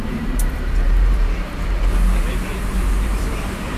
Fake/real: fake